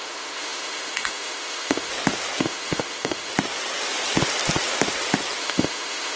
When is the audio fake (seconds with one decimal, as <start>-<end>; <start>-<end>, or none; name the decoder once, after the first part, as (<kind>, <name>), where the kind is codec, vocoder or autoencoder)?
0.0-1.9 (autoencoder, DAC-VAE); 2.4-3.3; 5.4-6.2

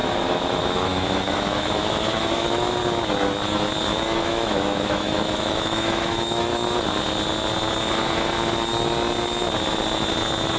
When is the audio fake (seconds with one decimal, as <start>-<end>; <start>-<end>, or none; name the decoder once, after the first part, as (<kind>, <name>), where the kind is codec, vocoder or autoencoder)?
0.0-2.8 (autoencoder, DAC-VAE); 3.9-6.5

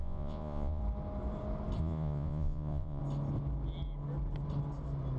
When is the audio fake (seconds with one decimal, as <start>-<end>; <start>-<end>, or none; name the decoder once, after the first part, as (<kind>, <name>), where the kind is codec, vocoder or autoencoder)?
0.0-0.8 (vocoder, Vocos); 1.8-3.0